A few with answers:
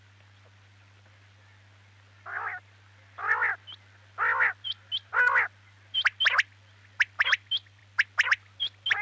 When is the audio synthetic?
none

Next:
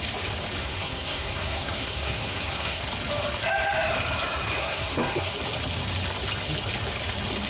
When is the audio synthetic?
0.6-2.8 (codec, SNAC); 4.6-5.3

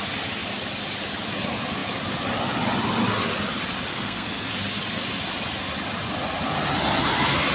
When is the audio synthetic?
3.9-4.5 (codec, SNAC)

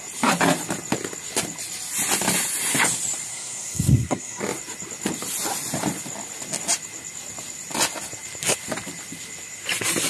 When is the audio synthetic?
3.3-4.4 (codec, SNAC)

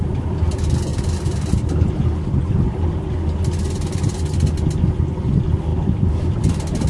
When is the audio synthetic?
none

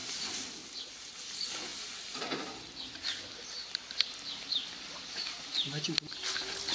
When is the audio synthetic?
none